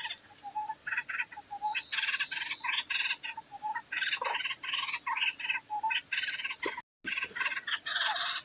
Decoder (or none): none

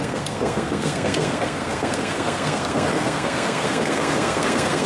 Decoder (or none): codec, SNAC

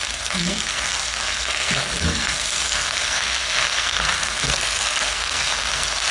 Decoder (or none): codec, SNAC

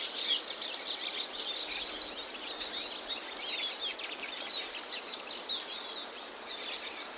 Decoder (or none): none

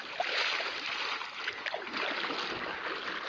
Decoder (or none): none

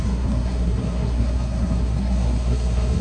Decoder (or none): codec, SNAC